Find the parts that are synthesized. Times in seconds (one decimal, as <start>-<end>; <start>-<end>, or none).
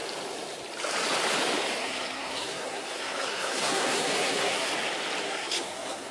1.8-4.7; 5.2-6.1